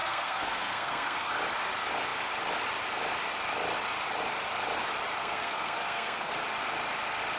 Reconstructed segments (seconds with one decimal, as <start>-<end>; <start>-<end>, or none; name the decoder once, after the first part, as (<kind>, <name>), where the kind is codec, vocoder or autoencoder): 0.0-1.3 (codec, SNAC); 5.2-6.3